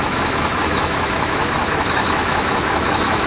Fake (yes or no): yes